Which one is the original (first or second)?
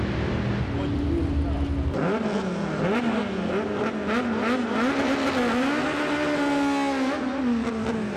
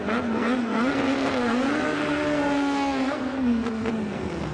first